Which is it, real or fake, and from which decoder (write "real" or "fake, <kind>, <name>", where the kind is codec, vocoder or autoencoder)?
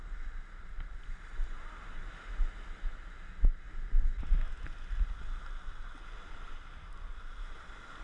real